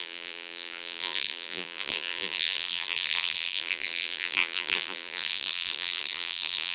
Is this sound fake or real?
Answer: fake